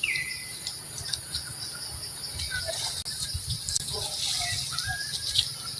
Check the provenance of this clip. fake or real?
real